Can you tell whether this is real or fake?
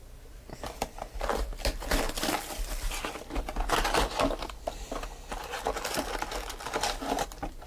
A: real